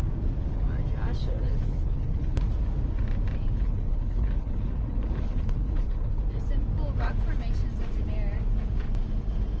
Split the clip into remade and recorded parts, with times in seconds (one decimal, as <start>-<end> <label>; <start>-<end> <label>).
0.0-1.2 recorded; 1.2-2.4 remade; 2.4-3.6 recorded; 3.6-6.2 remade; 6.2-9.6 recorded